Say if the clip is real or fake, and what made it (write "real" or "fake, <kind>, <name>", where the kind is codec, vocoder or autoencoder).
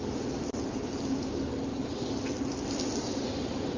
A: real